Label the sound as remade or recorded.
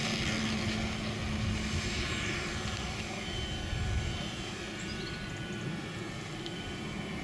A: recorded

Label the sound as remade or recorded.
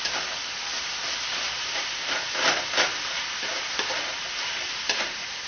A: recorded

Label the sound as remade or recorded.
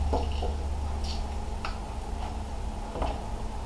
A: recorded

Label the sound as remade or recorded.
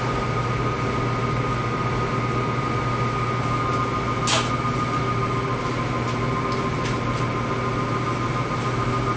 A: recorded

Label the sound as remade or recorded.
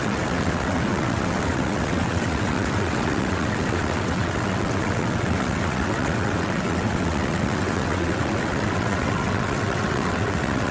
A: remade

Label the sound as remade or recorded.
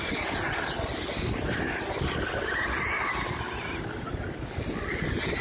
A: recorded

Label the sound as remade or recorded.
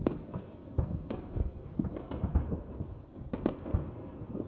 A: remade